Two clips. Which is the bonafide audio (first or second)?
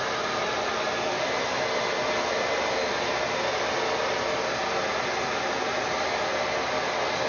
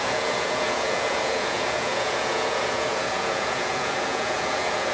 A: first